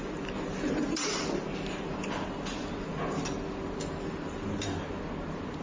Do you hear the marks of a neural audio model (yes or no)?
no